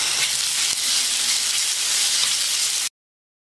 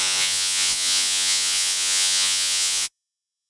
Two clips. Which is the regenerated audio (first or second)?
second